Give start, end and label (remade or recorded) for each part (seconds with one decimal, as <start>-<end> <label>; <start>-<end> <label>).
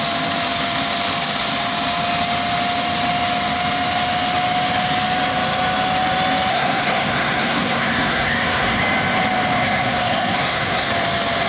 0.0-6.5 recorded; 6.5-8.8 remade; 8.8-9.6 recorded; 9.6-10.9 remade; 10.9-11.5 recorded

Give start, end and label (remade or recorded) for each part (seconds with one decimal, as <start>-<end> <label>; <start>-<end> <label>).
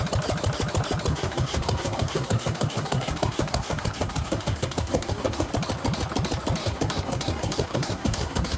0.0-1.1 recorded; 1.1-5.5 remade; 5.5-6.6 recorded; 6.6-8.6 remade